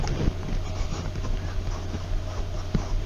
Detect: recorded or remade recorded